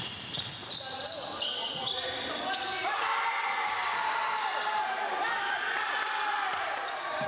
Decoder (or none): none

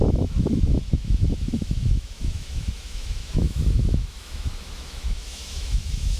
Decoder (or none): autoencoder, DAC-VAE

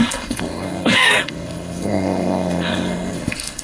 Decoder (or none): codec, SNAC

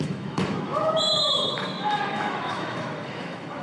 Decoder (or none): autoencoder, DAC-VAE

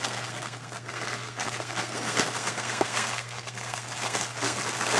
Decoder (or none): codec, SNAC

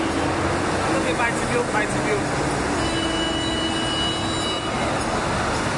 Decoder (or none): none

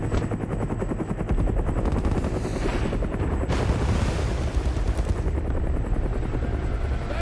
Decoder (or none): none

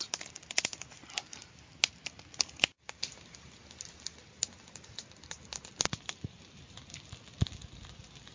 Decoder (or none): none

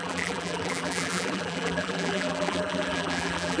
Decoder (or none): vocoder, BigVGAN v2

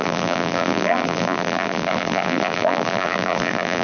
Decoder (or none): vocoder, BigVGAN v2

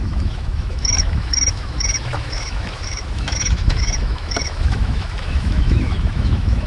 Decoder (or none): autoencoder, DAC-VAE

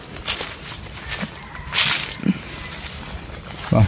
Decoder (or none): none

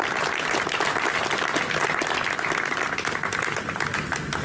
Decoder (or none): none